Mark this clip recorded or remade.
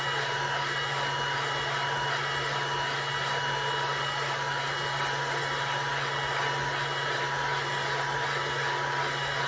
recorded